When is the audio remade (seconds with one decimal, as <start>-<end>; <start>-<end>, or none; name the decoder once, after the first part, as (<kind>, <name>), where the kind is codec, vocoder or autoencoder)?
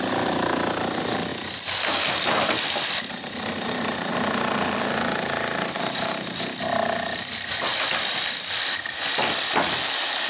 none